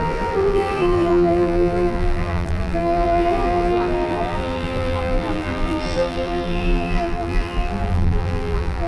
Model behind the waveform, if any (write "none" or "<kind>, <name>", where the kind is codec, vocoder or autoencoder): vocoder, BigVGAN v2